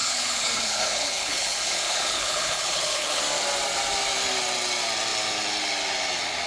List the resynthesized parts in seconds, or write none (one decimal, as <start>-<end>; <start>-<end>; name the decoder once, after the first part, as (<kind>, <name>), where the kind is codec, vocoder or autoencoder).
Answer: 0.0-3.2 (codec, HILCodec)